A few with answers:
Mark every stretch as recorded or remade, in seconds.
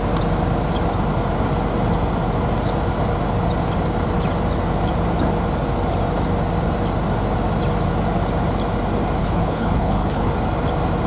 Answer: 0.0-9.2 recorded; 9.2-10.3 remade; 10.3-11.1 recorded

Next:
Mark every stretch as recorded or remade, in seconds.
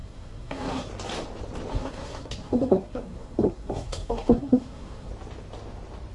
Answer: 0.0-0.9 remade; 0.9-1.7 recorded; 1.7-5.1 remade; 5.1-6.1 recorded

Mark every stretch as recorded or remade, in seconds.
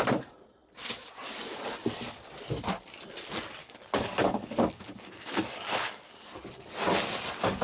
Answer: 0.0-3.6 recorded; 3.6-6.1 remade; 6.1-7.6 recorded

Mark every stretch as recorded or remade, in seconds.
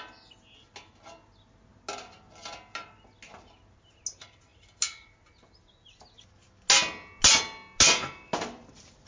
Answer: 0.0-9.1 recorded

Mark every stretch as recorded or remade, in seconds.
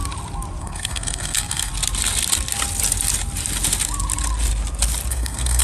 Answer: 0.0-0.6 recorded; 0.6-1.7 remade; 1.7-5.1 recorded; 5.1-5.6 remade